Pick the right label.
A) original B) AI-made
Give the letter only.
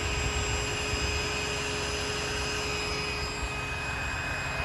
A